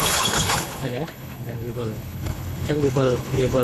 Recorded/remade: remade